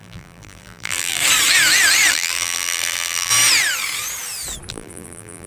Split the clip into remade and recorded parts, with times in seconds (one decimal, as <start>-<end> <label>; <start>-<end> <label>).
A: 0.0-1.2 remade; 1.2-2.1 recorded; 2.1-3.3 remade; 3.3-4.7 recorded; 4.7-5.5 remade